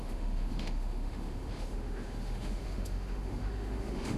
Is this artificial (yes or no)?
yes